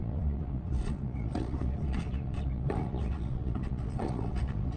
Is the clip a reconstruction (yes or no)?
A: yes